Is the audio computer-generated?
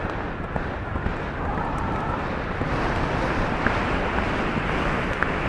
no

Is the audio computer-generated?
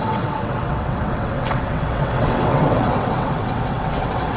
yes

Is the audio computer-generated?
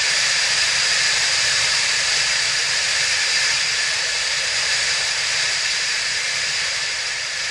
yes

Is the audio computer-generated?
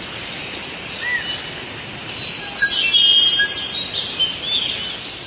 no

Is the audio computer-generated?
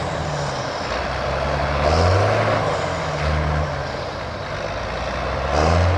no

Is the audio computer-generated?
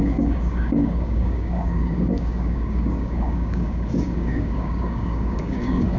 yes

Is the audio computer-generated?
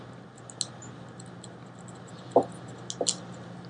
no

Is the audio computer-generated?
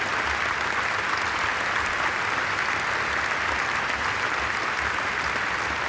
no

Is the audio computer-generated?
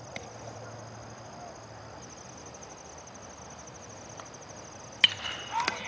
no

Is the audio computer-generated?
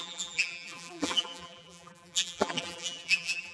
yes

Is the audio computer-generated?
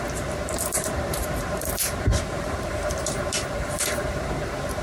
yes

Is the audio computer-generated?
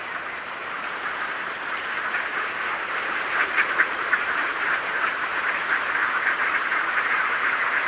yes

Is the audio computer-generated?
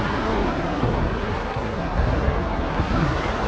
yes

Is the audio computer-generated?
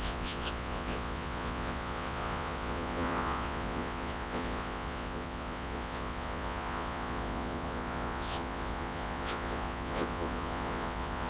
yes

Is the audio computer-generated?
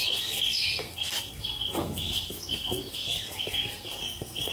yes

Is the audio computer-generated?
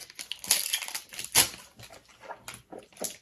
no